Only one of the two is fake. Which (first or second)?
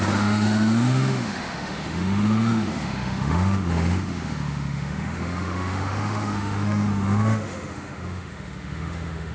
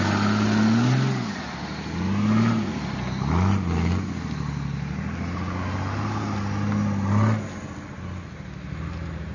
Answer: first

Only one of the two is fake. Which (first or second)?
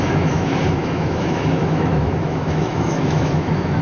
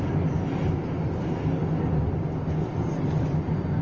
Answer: first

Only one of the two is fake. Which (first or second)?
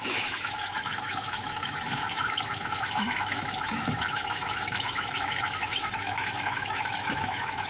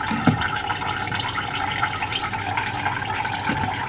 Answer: first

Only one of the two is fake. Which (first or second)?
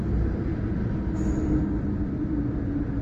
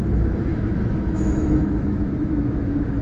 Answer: second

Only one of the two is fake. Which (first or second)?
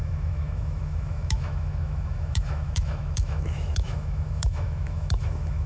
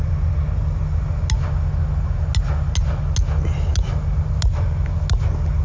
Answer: first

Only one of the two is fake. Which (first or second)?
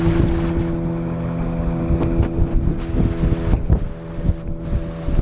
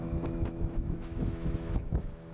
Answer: second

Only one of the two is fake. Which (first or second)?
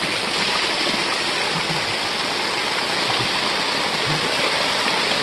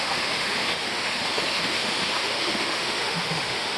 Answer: second